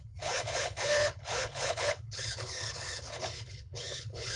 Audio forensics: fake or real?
fake